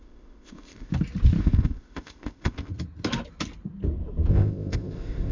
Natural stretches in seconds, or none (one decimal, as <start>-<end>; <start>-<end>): 0.9-1.4; 2.7-4.3

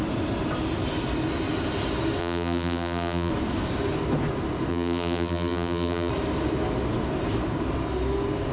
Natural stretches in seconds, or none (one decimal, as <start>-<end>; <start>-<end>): 0.0-2.2; 3.3-4.7; 6.1-8.5